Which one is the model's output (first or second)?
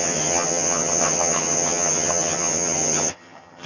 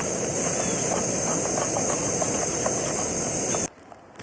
first